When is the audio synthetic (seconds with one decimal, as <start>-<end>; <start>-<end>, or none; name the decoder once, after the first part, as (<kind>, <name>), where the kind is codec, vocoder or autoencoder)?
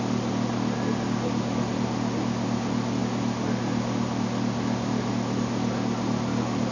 none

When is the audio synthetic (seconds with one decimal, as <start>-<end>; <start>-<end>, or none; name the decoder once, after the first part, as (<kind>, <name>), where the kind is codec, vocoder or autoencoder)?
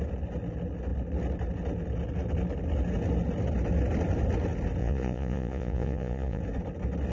4.8-6.4 (vocoder, Vocos)